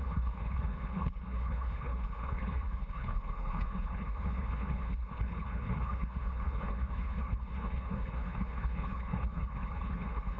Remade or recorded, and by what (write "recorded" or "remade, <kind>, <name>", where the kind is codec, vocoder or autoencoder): remade, codec, HILCodec